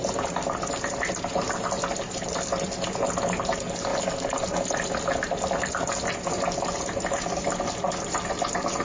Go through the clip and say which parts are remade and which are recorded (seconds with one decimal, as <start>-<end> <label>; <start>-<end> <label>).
0.0-8.8 recorded